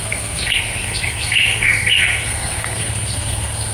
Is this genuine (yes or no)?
no